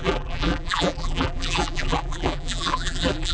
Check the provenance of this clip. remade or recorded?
remade